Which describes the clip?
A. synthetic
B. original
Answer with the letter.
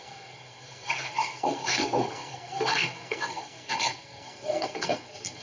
A